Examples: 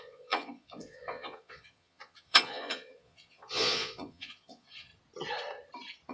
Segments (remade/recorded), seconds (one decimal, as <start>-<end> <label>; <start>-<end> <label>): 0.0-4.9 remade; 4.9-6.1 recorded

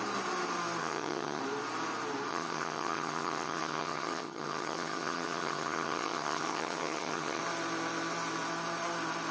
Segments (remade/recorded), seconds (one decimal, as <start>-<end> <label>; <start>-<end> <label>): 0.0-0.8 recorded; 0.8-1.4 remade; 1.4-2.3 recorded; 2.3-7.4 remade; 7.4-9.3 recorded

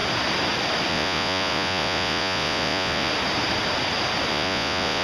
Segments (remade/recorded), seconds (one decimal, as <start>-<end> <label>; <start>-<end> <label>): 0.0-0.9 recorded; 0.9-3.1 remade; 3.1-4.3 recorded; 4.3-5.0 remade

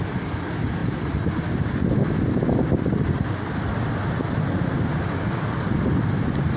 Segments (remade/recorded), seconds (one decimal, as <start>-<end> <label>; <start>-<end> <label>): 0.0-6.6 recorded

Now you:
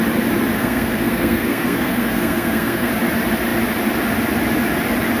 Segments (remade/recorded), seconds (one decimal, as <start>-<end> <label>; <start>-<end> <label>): 0.0-0.6 recorded; 0.6-2.9 remade; 2.9-5.2 recorded

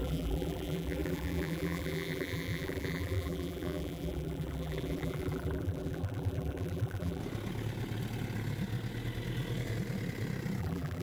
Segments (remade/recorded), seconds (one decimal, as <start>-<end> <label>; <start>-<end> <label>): 0.0-7.2 remade; 7.2-10.6 recorded; 10.6-11.0 remade

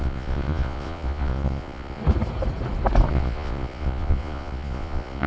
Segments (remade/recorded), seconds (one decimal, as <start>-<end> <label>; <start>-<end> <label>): 0.0-2.0 remade; 2.0-3.1 recorded; 3.1-5.3 remade